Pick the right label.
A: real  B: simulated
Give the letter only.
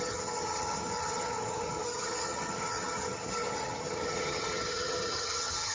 B